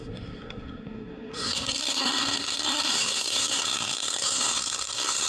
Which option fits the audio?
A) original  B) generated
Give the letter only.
B